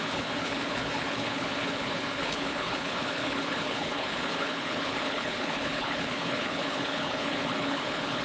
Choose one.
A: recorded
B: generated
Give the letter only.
B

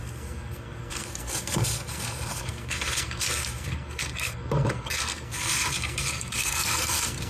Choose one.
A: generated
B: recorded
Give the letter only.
A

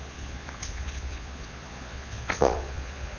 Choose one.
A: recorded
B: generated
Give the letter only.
B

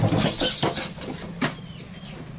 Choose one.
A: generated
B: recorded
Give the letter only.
B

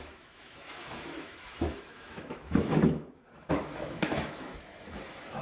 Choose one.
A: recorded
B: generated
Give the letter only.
B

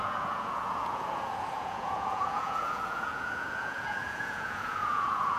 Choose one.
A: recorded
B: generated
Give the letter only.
B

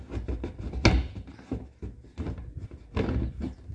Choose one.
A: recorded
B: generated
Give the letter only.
A